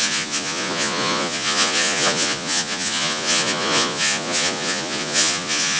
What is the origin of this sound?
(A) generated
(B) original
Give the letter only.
A